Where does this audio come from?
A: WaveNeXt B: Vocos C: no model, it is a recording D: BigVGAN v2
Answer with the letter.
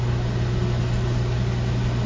C